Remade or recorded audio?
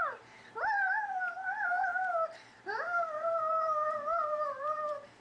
remade